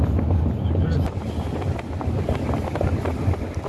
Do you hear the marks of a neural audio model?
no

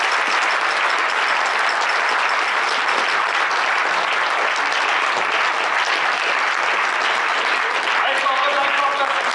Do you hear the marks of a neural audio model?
no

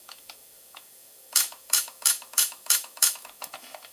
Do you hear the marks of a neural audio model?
yes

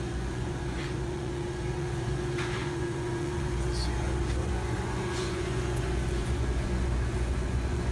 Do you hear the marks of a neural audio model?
yes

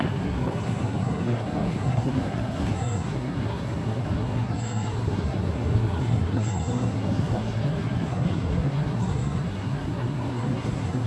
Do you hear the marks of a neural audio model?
yes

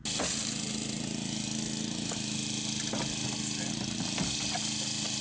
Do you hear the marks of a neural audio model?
no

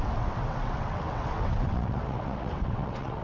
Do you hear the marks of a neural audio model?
yes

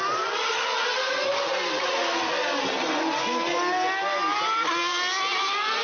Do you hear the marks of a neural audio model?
no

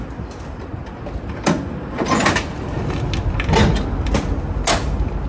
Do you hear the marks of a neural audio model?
no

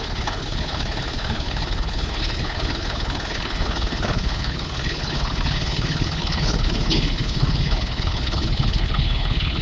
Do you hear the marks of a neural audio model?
yes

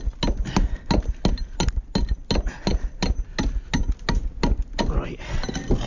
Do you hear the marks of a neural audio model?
no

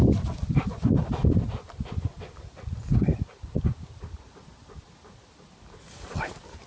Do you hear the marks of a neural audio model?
no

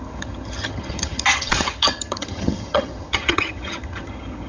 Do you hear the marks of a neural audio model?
yes